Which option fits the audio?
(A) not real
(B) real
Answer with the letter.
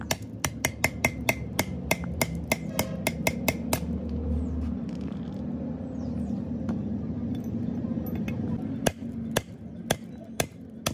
B